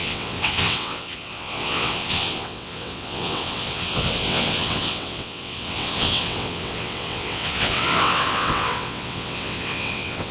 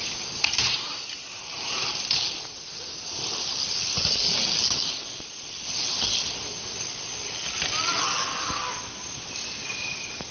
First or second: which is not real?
first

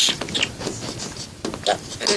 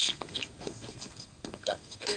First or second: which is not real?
second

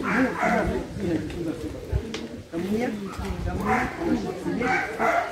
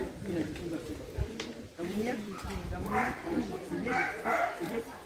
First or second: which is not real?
second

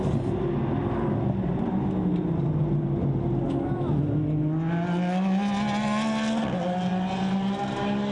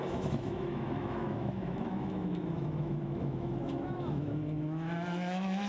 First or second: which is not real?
second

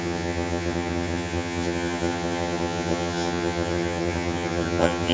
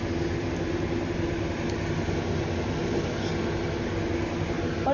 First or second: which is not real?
first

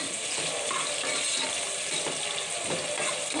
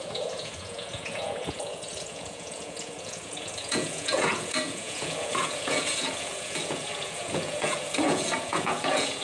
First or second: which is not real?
second